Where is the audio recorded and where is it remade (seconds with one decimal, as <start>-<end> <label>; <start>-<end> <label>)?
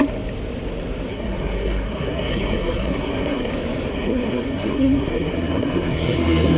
0.0-1.1 recorded; 1.1-3.5 remade; 3.5-3.9 recorded; 3.9-6.6 remade